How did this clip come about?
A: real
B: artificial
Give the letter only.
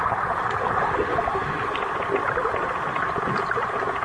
A